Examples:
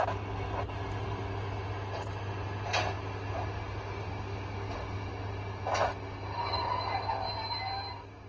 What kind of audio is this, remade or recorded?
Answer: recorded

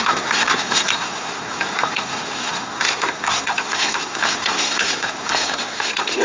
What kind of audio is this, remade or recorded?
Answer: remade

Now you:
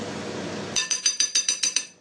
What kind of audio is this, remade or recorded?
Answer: remade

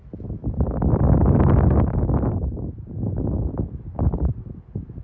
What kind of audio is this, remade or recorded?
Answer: recorded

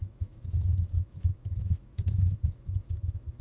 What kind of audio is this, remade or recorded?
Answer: remade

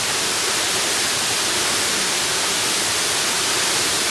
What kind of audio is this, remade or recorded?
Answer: recorded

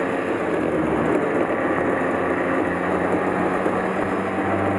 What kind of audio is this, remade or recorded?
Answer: recorded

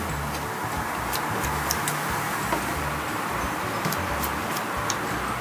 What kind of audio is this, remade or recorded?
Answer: recorded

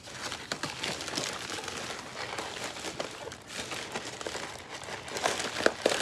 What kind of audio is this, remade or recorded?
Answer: recorded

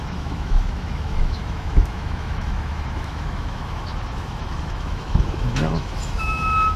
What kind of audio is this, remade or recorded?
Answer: remade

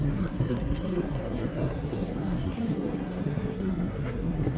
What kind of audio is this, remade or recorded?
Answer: remade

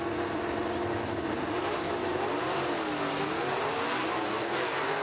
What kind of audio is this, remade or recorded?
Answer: recorded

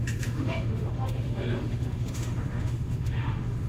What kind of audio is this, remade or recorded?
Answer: remade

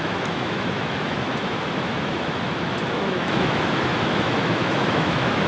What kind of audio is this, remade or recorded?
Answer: remade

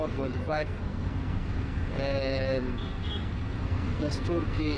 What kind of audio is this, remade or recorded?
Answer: remade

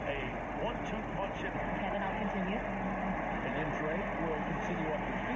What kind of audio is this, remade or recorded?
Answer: recorded